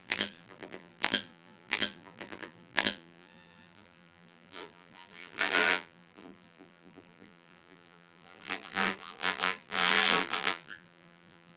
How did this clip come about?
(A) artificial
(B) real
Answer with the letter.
A